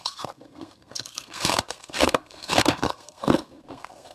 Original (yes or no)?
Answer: no